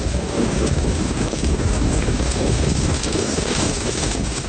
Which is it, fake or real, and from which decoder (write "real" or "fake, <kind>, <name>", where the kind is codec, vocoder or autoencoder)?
fake, codec, DAC